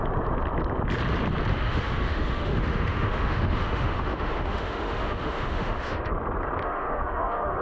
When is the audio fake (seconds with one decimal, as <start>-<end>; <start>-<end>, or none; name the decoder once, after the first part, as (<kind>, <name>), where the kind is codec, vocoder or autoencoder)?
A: 1.5-6.1 (autoencoder, DAC-VAE); 6.6-7.6